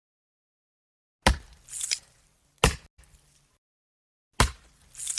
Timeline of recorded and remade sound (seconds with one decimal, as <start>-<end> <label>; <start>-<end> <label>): 0.0-5.2 recorded